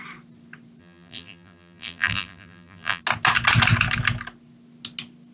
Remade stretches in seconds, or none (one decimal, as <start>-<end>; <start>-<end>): 0.8-3.0